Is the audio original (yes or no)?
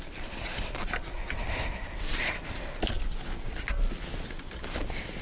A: yes